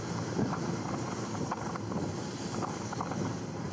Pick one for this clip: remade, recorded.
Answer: remade